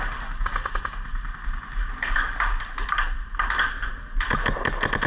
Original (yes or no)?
yes